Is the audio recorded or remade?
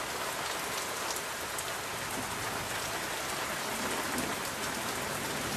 recorded